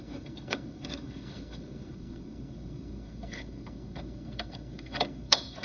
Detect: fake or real fake